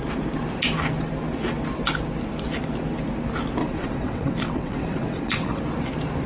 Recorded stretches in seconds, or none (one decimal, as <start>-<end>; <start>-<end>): 0.0-3.6; 5.6-6.3